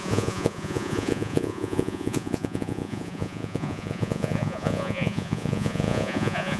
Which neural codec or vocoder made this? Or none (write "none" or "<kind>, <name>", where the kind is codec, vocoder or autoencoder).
vocoder, Vocos